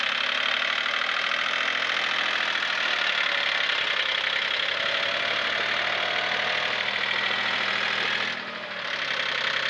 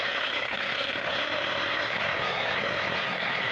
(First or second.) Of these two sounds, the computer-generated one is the second